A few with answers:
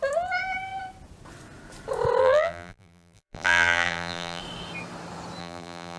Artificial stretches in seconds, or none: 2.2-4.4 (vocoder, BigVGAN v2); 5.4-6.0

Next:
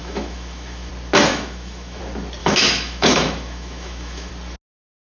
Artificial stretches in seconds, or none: 0.0-0.9 (autoencoder, DAC-VAE); 1.3-2.0; 2.4-4.3

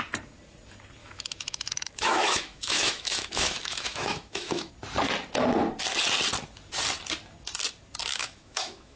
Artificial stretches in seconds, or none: 1.0-4.7 (autoencoder, DAC-VAE); 8.1-9.0

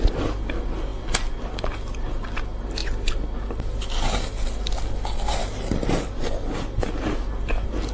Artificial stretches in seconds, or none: none

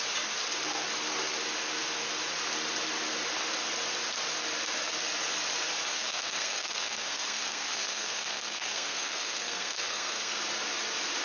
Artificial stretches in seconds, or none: 5.9-10.4 (codec, SNAC)

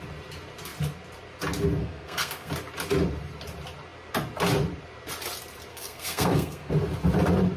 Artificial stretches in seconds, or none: 1.8-2.5 (codec, SNAC); 5.7-6.7

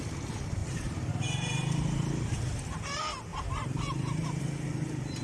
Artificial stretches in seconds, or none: 0.6-1.1 (vocoder, BigVGAN v2); 1.6-2.5; 3.3-4.4

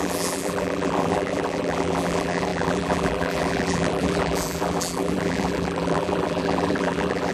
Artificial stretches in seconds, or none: 0.0-7.3 (vocoder, BigVGAN v2)